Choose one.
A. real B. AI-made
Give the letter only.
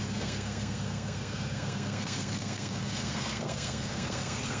B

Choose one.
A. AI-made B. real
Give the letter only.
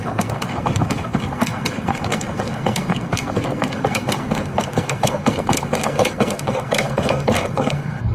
A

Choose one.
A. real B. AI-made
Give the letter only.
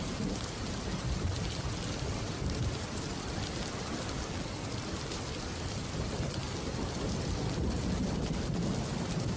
A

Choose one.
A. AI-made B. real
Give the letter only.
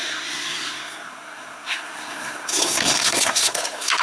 A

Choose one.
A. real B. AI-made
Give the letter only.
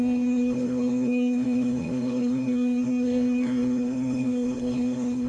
B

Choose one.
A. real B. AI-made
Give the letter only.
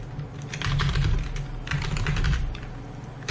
A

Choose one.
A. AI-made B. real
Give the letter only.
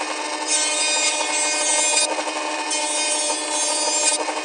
B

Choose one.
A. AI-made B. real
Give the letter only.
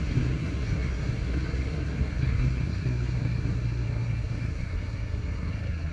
A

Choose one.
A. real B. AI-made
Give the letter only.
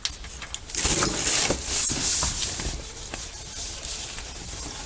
A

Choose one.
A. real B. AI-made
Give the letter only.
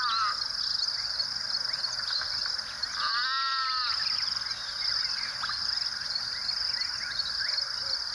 A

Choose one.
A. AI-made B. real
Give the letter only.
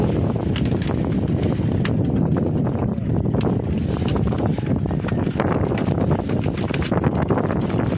B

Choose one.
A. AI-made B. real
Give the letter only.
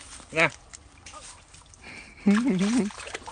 B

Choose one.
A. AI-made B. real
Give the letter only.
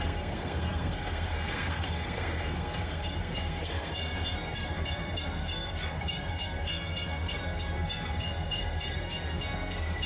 A